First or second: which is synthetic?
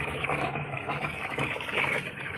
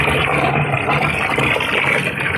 first